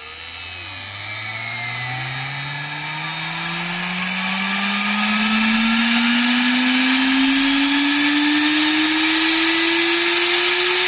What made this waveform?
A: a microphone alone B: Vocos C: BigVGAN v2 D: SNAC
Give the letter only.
A